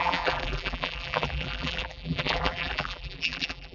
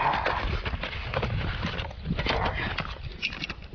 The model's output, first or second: first